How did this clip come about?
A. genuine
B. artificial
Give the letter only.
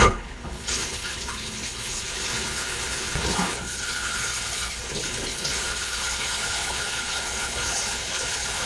B